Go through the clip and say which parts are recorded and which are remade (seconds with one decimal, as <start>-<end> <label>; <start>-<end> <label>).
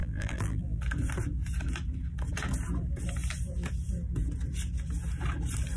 0.0-0.8 remade; 0.8-5.8 recorded